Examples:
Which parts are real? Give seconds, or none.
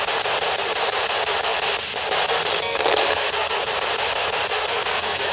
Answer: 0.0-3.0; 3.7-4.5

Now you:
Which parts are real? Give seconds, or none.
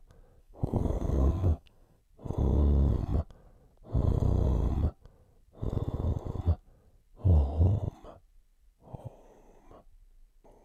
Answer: 0.0-0.4; 2.0-10.6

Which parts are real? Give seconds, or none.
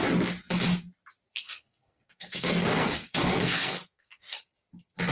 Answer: 0.0-1.3; 4.4-5.1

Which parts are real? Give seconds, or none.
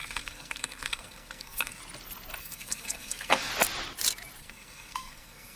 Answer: 1.8-2.4; 3.5-4.4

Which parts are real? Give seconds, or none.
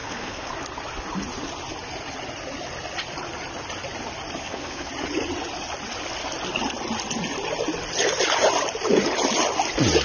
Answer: 0.5-4.4; 4.9-10.0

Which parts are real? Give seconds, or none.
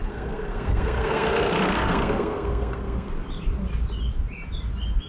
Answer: 3.1-5.1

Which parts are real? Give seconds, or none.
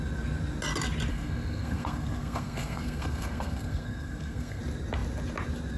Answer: 0.0-1.1; 4.6-5.8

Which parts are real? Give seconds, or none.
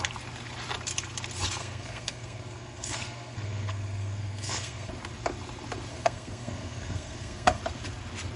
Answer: 0.0-1.6; 4.9-5.9; 7.6-8.4